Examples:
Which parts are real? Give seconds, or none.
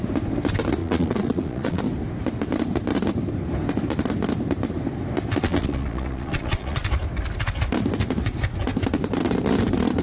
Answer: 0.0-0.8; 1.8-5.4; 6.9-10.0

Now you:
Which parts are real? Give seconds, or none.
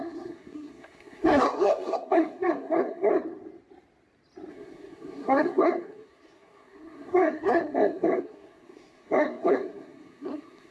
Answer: 3.1-4.5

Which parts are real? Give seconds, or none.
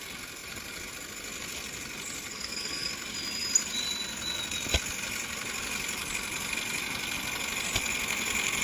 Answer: 0.0-2.3; 2.9-8.6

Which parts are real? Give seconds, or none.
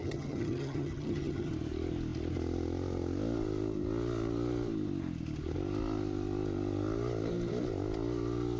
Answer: 1.5-8.6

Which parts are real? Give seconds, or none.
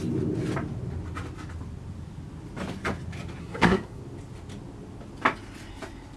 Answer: 0.0-3.4; 4.0-6.2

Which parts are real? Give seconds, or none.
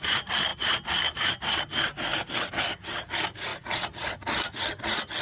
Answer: 0.0-5.2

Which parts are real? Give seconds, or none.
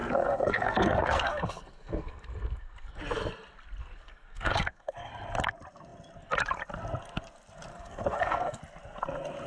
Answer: 3.0-3.8; 5.1-7.7; 8.6-9.5